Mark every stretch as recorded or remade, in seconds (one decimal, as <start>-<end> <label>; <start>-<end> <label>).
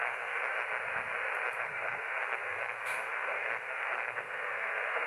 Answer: 0.0-0.4 remade; 0.4-1.6 recorded; 1.6-5.1 remade